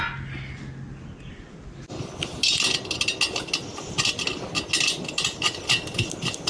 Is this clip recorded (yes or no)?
yes